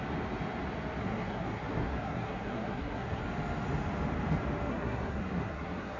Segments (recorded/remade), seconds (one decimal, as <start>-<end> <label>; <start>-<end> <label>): 0.0-1.0 recorded; 1.0-3.2 remade; 3.2-4.7 recorded; 4.7-6.0 remade